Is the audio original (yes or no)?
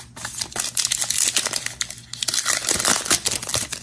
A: yes